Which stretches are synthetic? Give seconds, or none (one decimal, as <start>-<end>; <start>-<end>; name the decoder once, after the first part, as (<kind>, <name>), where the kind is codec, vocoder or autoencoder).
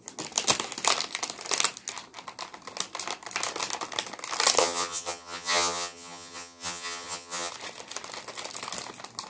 4.6-7.5 (vocoder, HiFi-GAN)